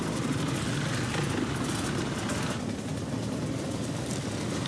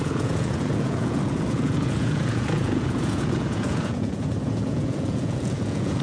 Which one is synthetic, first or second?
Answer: second